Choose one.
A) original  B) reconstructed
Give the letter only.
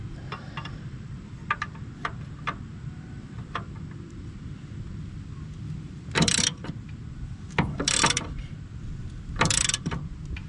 B